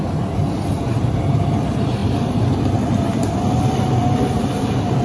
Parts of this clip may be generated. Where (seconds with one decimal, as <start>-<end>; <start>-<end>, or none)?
none